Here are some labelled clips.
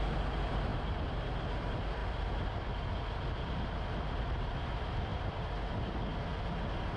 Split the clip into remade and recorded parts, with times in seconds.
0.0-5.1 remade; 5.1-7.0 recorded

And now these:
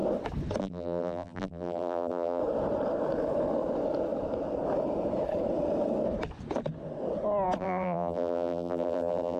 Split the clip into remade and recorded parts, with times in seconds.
0.0-0.6 recorded; 0.6-2.4 remade; 2.4-7.6 recorded; 7.6-9.4 remade

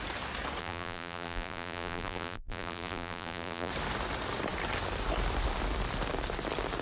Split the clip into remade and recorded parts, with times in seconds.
0.0-0.6 recorded; 0.6-3.7 remade; 3.7-6.8 recorded